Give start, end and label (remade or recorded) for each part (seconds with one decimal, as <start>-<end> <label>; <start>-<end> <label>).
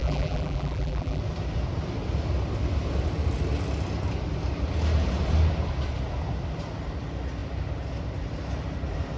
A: 0.0-1.2 remade; 1.2-9.2 recorded